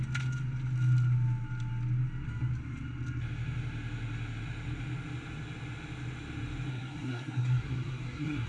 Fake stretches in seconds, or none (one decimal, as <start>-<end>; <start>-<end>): 6.7-8.5